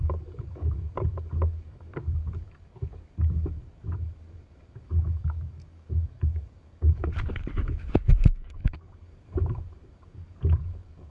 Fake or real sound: fake